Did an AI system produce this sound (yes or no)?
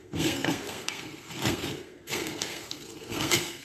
yes